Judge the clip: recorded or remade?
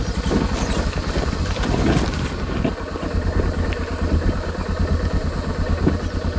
recorded